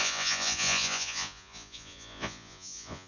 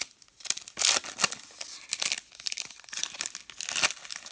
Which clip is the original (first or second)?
second